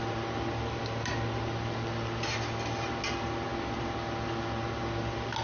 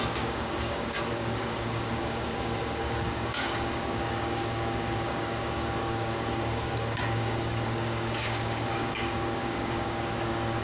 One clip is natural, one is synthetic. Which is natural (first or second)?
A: first